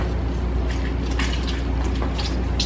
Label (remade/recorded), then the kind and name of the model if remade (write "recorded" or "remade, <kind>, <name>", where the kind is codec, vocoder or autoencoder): recorded